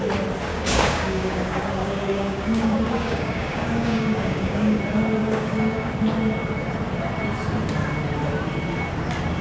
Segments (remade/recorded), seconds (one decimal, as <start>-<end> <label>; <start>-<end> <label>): 0.0-0.5 recorded; 0.5-4.8 remade; 4.8-5.2 recorded; 5.2-5.9 remade; 5.9-9.4 recorded